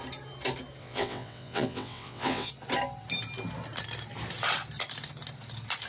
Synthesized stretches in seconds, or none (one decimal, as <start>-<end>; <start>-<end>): 0.8-2.5